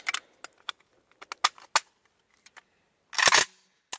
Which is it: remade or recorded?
recorded